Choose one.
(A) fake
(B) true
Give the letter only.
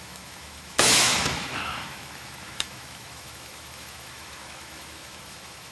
A